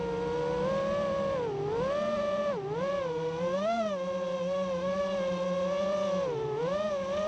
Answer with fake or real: real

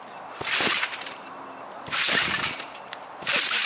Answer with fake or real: fake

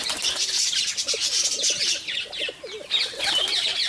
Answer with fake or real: real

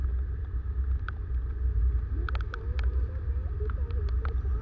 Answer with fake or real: real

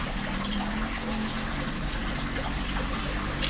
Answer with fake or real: real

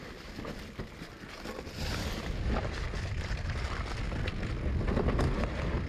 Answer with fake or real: real